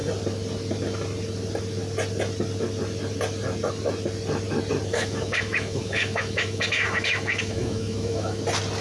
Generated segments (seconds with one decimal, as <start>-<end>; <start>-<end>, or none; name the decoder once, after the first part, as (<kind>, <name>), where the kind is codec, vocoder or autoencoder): 4.9-8.4 (autoencoder, DAC-VAE)